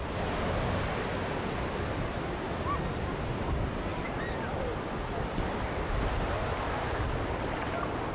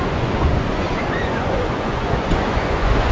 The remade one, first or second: second